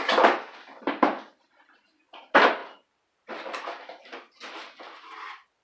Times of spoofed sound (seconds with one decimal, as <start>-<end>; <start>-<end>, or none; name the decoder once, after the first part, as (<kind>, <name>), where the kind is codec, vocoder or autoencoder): 2.6-4.0 (vocoder, BigVGAN v2)